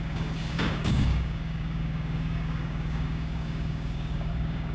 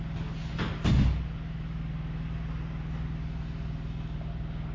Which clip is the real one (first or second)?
second